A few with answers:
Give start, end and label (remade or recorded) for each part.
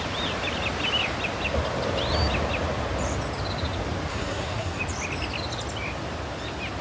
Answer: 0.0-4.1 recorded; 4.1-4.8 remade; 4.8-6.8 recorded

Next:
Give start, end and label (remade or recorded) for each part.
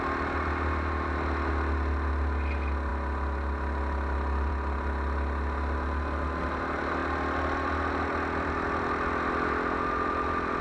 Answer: 0.0-10.6 recorded